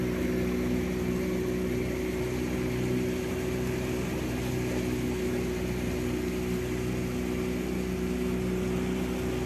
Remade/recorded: recorded